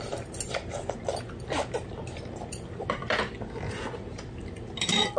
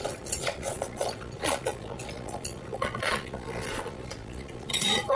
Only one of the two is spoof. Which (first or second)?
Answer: second